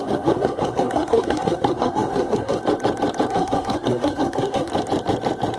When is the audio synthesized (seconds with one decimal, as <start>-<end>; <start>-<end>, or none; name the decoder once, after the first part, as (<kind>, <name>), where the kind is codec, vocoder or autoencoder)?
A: 0.0-2.6 (codec, SNAC); 3.3-4.7